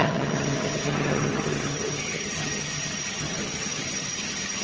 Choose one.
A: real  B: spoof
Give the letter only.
B